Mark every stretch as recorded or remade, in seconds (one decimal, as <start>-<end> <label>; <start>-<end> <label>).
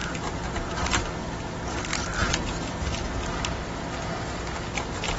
0.0-1.1 remade; 1.1-5.2 recorded